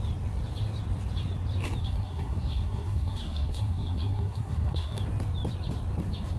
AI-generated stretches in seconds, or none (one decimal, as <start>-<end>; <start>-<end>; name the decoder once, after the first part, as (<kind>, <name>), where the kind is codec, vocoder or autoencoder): 1.8-5.0 (codec, SNAC)